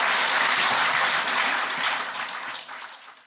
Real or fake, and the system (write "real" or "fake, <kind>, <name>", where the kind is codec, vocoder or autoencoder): real